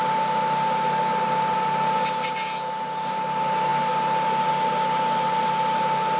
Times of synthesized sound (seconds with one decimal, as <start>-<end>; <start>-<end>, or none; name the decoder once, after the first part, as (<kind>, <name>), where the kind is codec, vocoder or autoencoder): none

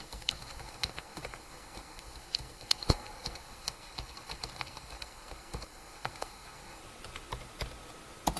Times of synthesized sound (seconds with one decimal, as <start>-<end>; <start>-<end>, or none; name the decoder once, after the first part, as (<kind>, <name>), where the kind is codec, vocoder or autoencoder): 0.0-6.8 (codec, SNAC)

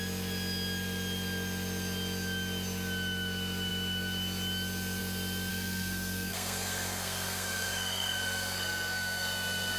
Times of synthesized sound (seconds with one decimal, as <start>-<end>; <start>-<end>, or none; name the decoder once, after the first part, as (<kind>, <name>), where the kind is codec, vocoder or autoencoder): 5.5-9.8 (codec, SNAC)

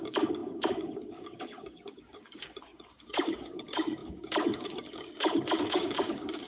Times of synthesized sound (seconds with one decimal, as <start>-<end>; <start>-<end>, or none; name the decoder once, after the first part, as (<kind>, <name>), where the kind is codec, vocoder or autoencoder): 0.0-6.5 (codec, DAC)

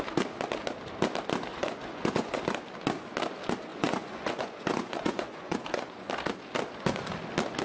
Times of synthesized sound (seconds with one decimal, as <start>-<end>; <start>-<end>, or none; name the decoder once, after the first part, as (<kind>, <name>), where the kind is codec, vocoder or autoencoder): 1.5-2.6 (vocoder, Vocos); 3.7-6.1

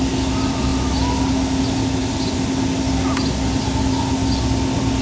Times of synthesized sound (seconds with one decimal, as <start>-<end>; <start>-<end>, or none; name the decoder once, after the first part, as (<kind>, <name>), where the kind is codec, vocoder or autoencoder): none

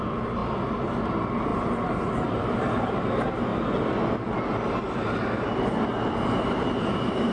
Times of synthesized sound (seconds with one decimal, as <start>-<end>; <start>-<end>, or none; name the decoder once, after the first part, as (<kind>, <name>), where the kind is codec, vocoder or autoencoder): 0.0-0.4 (vocoder, BigVGAN v2); 1.0-3.5; 6.5-7.3